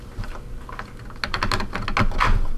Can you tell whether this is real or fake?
real